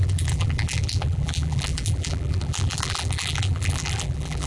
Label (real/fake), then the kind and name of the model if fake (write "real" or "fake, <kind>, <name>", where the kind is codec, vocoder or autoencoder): fake, vocoder, BigVGAN v2